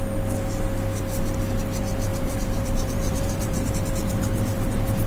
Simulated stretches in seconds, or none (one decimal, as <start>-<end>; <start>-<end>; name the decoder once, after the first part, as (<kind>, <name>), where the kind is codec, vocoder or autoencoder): 2.1-3.7 (vocoder, BigVGAN v2)